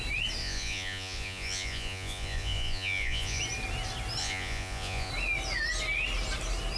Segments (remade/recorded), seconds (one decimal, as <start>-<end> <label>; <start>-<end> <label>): 0.0-0.4 recorded; 0.4-3.4 remade; 3.4-4.2 recorded; 4.2-5.1 remade; 5.1-6.8 recorded